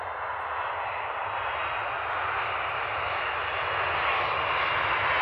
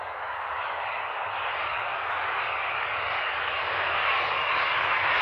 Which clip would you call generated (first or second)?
second